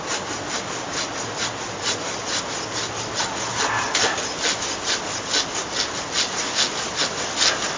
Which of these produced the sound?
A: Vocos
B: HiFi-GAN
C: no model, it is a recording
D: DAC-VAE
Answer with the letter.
C